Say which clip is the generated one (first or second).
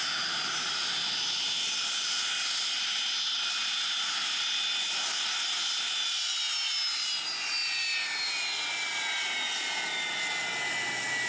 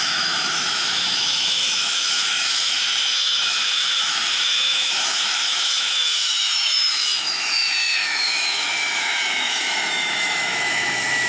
second